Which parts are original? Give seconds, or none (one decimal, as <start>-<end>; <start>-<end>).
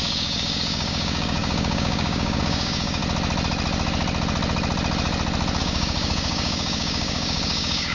3.0-5.6